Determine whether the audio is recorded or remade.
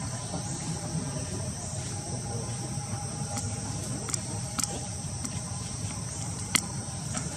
remade